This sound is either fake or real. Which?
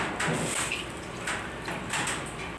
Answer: real